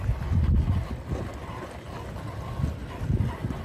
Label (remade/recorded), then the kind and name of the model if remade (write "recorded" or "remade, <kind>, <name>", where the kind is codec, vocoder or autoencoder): recorded